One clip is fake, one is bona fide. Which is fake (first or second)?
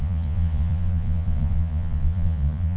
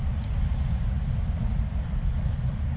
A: first